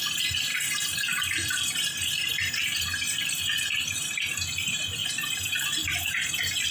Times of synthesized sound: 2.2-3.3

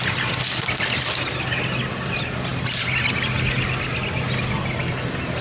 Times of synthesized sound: none

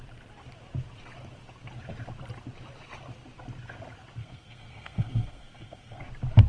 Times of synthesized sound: 4.2-6.0